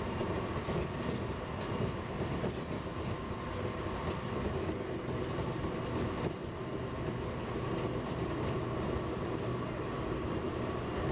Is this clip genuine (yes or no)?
yes